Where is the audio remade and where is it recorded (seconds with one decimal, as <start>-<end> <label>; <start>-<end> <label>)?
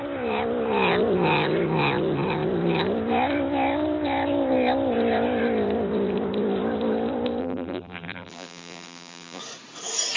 0.0-7.4 recorded; 7.4-9.4 remade; 9.4-10.2 recorded